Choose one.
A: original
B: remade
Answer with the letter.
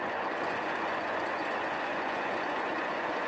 B